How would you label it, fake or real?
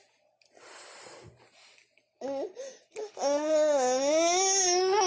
real